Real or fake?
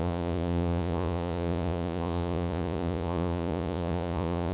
fake